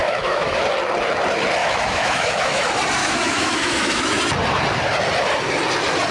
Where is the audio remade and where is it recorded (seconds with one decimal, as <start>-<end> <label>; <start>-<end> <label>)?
0.0-0.6 remade; 0.6-1.6 recorded; 1.6-2.6 remade; 2.6-3.0 recorded; 3.0-4.2 remade; 4.2-6.1 recorded